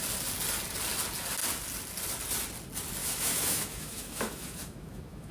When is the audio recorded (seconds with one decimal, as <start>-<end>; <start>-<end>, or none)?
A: 0.0-3.0